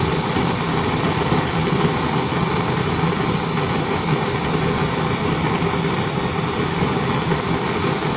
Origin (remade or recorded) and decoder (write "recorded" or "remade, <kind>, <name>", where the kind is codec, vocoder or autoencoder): recorded